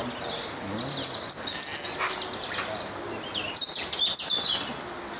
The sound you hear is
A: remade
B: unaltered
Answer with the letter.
B